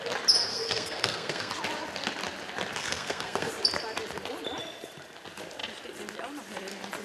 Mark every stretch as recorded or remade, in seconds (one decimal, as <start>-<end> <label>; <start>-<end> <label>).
0.0-0.5 recorded; 0.5-1.5 remade; 1.5-2.8 recorded; 2.8-3.5 remade; 3.5-7.0 recorded